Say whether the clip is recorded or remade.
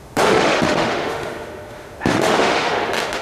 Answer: remade